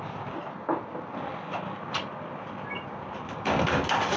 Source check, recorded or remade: recorded